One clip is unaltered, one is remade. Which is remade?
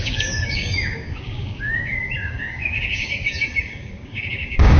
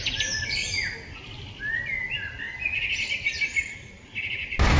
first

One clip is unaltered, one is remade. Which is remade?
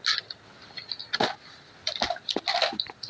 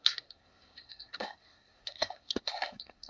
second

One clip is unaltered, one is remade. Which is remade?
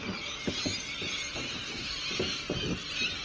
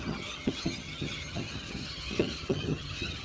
second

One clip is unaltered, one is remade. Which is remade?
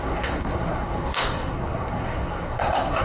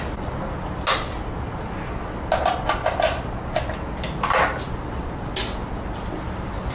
first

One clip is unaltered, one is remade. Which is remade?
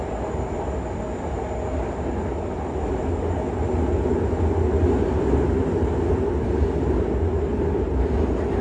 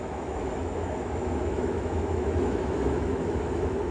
second